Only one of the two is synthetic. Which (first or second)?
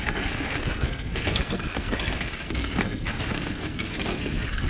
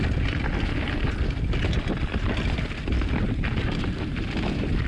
first